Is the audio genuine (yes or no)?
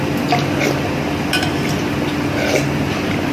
yes